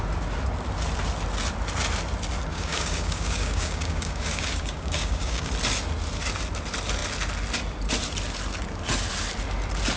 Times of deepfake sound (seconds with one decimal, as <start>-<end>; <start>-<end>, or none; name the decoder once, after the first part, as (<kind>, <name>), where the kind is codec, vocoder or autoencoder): 2.5-5.5 (codec, DAC)